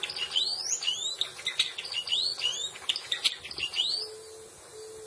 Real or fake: real